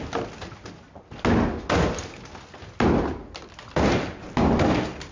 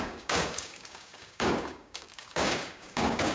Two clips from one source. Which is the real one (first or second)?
first